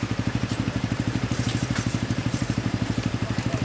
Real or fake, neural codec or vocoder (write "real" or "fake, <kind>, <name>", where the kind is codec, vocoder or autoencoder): fake, vocoder, BigVGAN v2